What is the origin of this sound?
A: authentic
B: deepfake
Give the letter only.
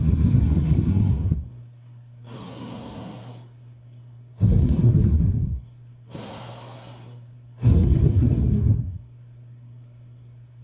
B